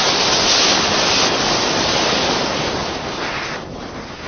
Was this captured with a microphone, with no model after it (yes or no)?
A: yes